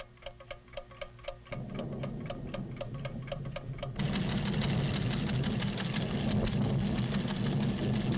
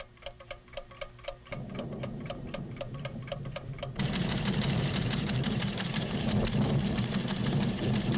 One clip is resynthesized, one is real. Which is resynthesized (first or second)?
second